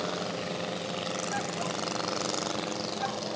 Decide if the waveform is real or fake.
real